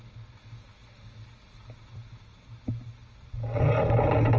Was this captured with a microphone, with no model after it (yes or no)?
yes